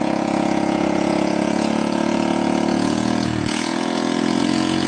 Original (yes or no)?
no